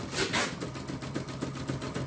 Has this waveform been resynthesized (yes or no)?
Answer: no